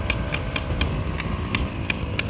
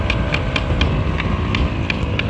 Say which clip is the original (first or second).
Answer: second